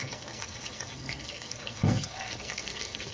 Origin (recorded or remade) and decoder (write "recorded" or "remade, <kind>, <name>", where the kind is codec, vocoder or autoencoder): remade, codec, SNAC